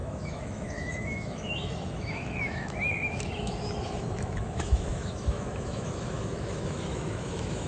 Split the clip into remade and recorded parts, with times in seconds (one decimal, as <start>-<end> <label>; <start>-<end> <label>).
0.0-7.7 remade